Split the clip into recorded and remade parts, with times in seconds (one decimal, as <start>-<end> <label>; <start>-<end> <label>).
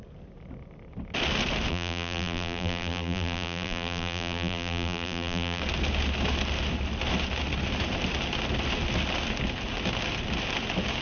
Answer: 0.0-1.7 recorded; 1.7-5.6 remade; 5.6-11.0 recorded